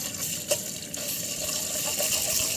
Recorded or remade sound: recorded